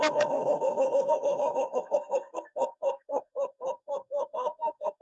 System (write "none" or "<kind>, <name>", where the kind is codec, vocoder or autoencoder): codec, SNAC